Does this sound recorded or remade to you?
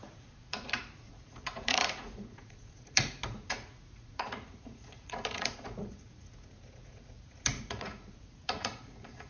remade